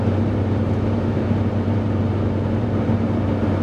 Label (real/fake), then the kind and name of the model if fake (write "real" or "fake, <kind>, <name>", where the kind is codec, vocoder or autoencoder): fake, vocoder, BigVGAN v2